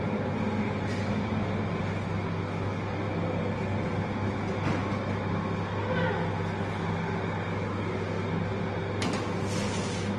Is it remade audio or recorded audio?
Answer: recorded